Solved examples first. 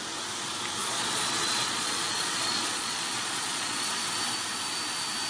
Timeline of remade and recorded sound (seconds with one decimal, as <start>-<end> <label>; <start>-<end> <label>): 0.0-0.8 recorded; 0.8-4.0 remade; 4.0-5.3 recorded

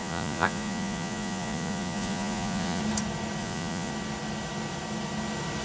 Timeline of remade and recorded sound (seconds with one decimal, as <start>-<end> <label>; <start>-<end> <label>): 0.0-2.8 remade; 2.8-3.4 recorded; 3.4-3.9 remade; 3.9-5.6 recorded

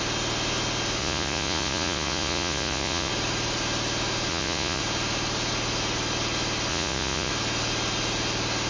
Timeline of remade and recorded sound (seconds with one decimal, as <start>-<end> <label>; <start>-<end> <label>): 0.0-1.0 recorded; 1.0-3.1 remade; 3.1-4.3 recorded; 4.3-4.8 remade; 4.8-6.7 recorded; 6.7-7.3 remade; 7.3-8.7 recorded

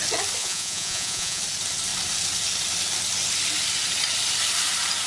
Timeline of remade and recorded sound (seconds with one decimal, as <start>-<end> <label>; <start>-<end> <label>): 0.0-0.4 recorded; 0.4-1.4 remade; 1.4-5.1 recorded

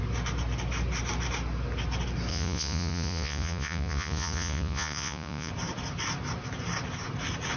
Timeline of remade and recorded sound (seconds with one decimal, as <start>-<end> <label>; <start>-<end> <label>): 0.0-2.3 recorded; 2.3-5.5 remade; 5.5-7.6 recorded

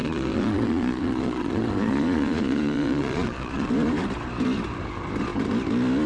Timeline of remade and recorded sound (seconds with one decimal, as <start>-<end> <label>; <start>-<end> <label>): 0.0-3.7 remade; 3.7-6.1 recorded

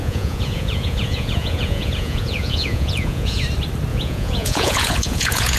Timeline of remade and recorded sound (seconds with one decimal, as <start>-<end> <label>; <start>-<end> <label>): 0.0-3.4 remade; 3.4-3.9 recorded; 3.9-5.6 remade